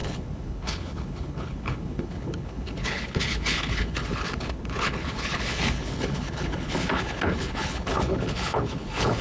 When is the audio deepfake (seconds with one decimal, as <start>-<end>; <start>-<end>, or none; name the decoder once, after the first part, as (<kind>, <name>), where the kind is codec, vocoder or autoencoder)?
0.0-9.2 (codec, HILCodec)